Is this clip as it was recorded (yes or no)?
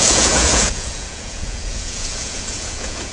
no